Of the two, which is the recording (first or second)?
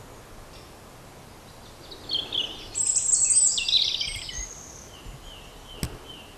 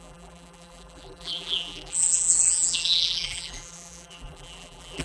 first